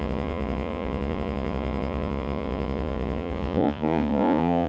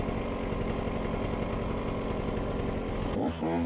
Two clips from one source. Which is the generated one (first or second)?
first